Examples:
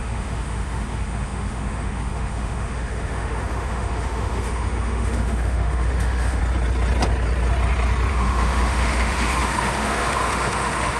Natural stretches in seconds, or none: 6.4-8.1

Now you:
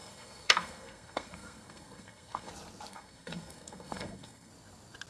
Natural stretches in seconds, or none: 2.5-2.9; 4.5-5.1

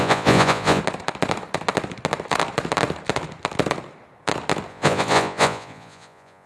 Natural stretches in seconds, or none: 0.8-4.7